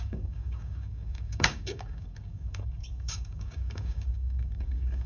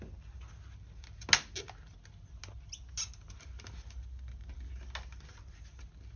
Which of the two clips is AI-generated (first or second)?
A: first